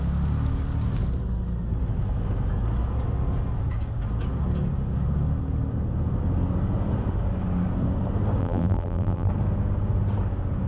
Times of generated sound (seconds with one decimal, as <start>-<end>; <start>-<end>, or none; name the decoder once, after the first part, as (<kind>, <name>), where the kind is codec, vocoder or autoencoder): 8.4-9.3 (vocoder, BigVGAN v2)